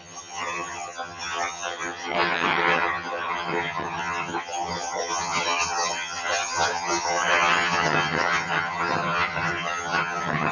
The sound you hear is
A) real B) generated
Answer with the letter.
B